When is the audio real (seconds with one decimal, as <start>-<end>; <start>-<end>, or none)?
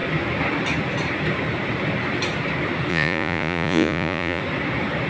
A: 0.0-2.9; 4.4-5.1